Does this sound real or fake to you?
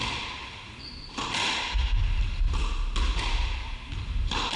real